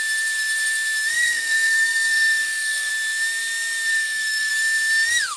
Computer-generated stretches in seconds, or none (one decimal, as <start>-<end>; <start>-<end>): 1.1-2.9; 3.9-4.5